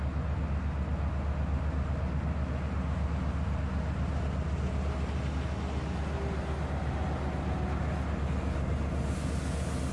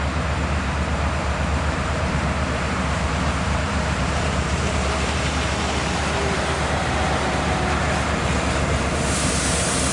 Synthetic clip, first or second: second